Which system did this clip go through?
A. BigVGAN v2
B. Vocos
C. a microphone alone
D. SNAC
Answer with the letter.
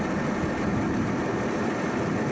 C